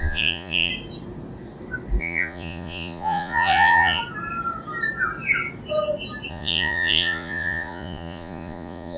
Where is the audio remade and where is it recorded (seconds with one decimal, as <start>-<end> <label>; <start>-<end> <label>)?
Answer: 0.0-0.7 remade; 0.7-2.0 recorded; 2.0-4.0 remade; 4.0-6.3 recorded; 6.3-9.0 remade